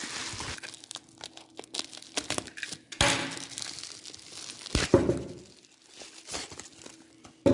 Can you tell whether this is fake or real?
real